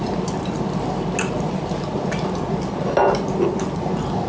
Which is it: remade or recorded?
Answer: recorded